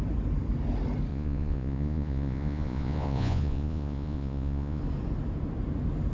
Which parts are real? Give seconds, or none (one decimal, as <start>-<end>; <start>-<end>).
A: 0.0-1.1; 4.8-6.1